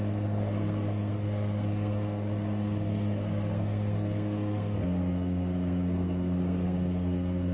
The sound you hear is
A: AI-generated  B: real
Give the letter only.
A